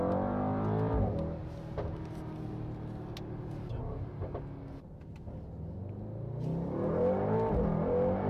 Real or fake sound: real